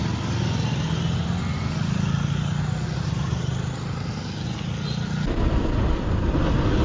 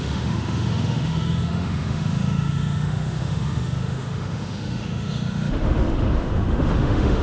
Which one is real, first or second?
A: first